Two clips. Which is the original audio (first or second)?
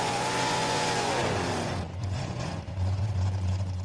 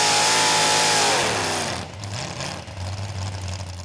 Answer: second